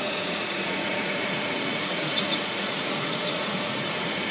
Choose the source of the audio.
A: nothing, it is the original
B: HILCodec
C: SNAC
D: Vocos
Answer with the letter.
D